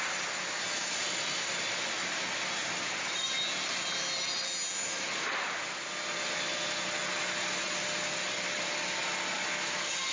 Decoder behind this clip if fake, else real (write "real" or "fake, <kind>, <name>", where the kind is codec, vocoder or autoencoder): real